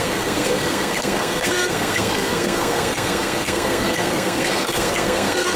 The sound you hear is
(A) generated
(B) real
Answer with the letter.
A